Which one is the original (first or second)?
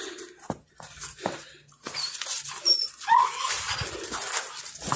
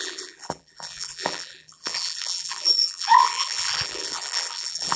first